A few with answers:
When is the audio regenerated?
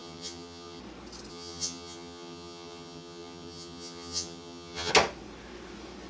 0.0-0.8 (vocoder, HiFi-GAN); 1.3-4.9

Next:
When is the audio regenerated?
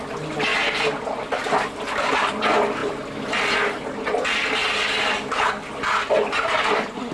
none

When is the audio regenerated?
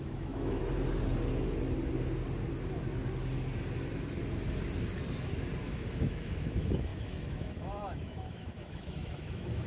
0.0-0.6 (autoencoder, DAC-VAE); 5.6-9.7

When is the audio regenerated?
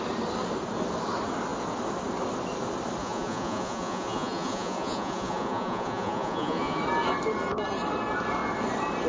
3.0-6.8 (vocoder, Vocos)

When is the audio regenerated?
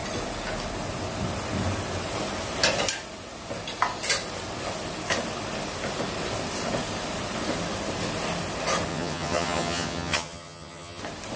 8.9-11.0 (vocoder, HiFi-GAN)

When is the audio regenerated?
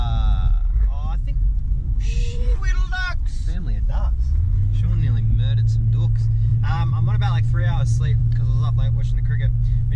2.3-4.1 (vocoder, BigVGAN v2); 6.5-8.2